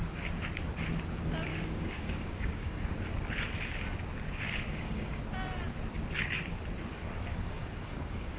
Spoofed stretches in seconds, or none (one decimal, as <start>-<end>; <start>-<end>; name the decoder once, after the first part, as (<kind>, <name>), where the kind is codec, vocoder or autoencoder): 1.5-2.9 (codec, DAC); 4.7-5.2; 7.3-8.4